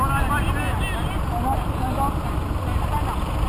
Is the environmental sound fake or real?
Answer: real